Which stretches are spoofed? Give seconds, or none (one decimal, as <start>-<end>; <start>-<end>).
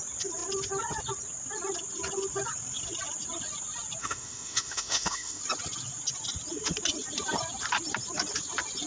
4.0-5.4